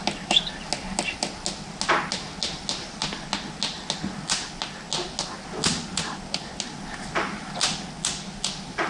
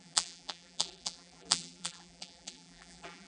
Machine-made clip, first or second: second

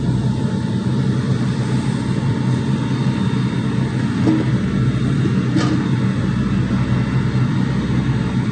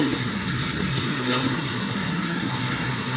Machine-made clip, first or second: second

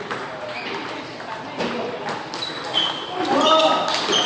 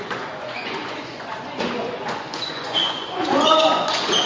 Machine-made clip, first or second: second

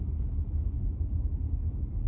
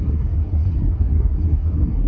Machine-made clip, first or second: second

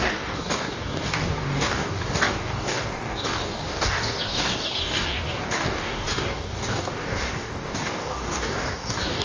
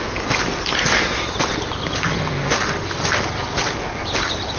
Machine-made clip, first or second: first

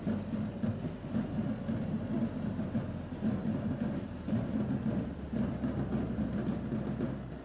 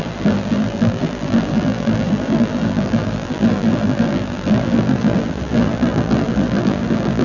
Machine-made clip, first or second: second